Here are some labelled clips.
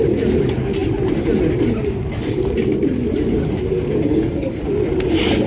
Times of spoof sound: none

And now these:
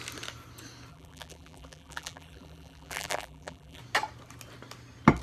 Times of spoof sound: 0.9-3.8 (vocoder, BigVGAN v2)

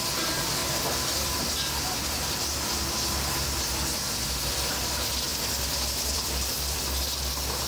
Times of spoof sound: 0.6-1.4 (vocoder, BigVGAN v2); 5.3-6.8

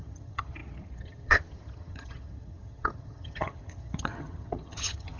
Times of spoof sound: 0.0-5.2 (vocoder, HiFi-GAN)

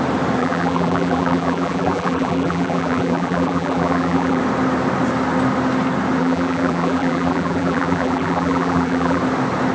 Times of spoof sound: 0.4-4.4 (vocoder, BigVGAN v2); 6.2-9.2

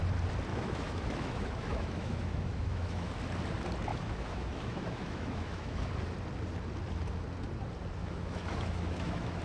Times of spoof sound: 0.5-3.1 (autoencoder, DAC-VAE); 3.9-5.9; 8.0-9.4

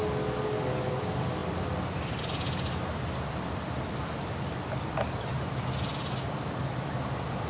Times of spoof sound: none